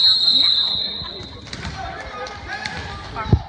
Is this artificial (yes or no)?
no